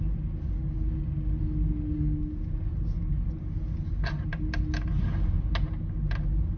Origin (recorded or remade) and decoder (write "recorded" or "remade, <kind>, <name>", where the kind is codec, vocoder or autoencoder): recorded